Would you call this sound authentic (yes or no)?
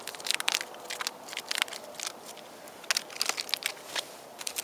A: yes